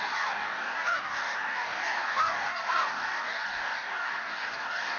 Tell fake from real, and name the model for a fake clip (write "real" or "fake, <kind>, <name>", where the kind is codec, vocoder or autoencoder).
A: fake, codec, DAC